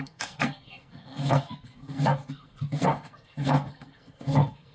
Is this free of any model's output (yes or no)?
no